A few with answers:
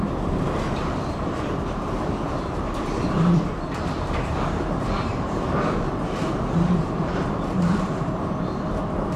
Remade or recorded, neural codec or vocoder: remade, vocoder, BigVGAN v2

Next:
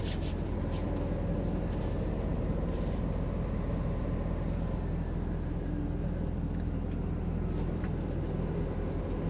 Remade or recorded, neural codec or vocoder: recorded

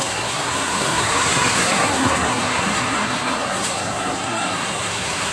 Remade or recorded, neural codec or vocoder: remade, codec, SNAC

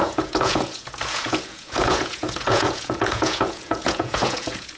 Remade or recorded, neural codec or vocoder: remade, vocoder, Vocos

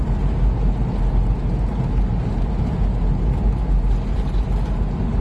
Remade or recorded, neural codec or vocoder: recorded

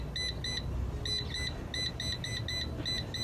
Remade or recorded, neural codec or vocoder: recorded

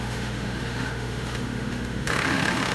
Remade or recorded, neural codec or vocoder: remade, autoencoder, DAC-VAE